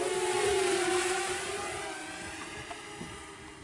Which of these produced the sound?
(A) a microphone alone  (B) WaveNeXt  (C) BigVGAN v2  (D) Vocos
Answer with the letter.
C